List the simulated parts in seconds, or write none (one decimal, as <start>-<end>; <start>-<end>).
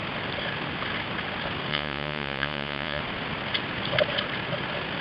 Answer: 1.7-3.0